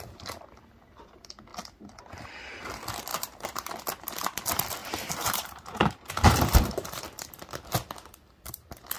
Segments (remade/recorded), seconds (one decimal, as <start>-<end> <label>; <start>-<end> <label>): 0.0-3.1 recorded; 3.1-3.7 remade; 3.7-4.8 recorded; 4.8-7.0 remade; 7.0-9.0 recorded